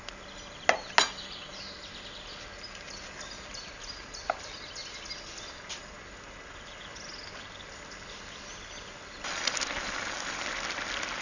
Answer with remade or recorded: recorded